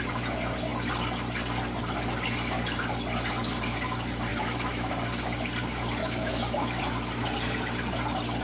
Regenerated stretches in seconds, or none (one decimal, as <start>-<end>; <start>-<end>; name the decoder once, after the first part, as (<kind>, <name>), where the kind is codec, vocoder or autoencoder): 4.3-4.9 (autoencoder, DAC-VAE); 6.0-6.8